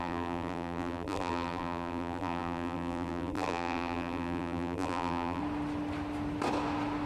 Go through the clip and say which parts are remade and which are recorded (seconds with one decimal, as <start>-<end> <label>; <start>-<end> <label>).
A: 0.0-5.4 remade; 5.4-7.1 recorded